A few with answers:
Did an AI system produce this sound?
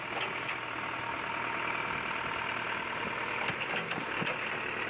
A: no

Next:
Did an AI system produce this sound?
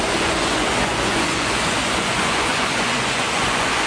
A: yes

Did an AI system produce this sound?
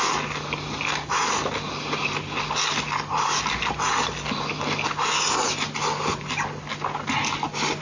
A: no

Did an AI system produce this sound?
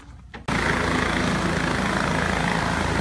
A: no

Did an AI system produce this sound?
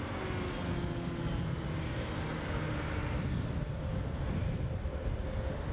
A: no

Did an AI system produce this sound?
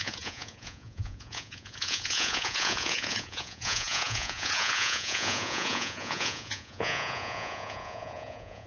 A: yes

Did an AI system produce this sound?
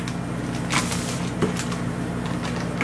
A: no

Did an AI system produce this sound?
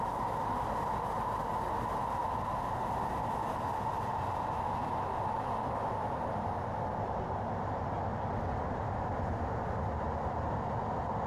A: no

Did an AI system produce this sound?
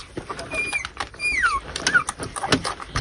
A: no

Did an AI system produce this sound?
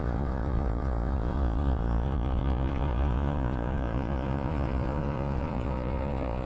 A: yes